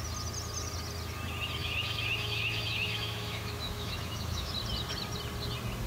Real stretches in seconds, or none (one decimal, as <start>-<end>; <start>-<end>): 0.0-1.6; 4.5-5.9